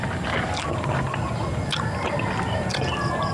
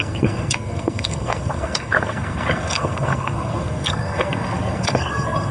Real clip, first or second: first